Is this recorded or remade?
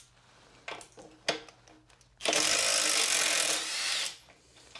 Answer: recorded